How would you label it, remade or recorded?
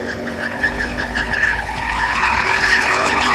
remade